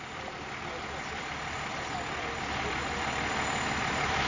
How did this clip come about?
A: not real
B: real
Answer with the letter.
B